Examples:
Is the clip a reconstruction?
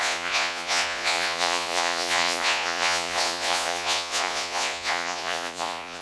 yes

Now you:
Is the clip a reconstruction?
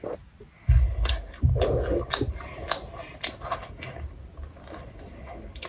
no